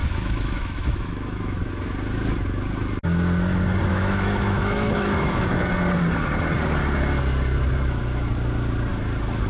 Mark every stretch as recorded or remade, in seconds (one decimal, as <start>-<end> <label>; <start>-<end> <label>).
0.0-1.7 remade; 1.7-3.9 recorded; 3.9-5.7 remade; 5.7-9.5 recorded